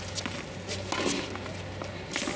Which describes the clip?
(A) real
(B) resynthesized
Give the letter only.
A